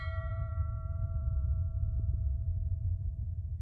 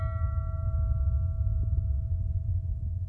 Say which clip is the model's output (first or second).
first